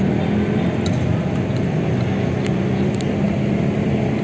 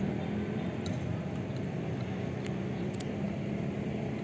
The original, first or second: first